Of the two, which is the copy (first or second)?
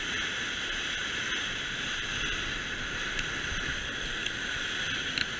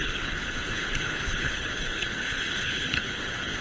second